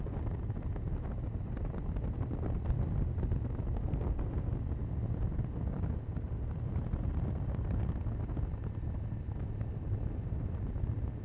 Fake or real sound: real